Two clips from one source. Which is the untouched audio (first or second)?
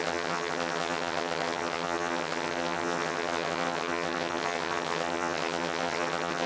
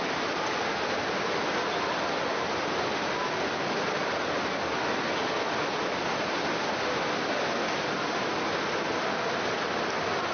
second